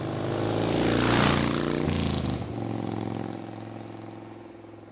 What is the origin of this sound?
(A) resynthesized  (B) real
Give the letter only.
B